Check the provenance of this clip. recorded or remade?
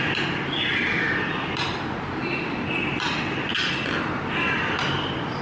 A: recorded